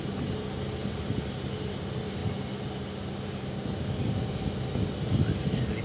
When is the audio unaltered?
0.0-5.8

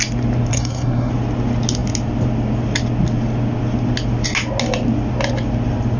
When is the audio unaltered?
0.0-0.5; 1.1-6.0